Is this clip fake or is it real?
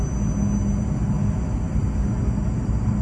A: real